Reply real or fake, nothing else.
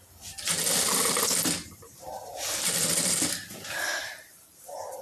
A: fake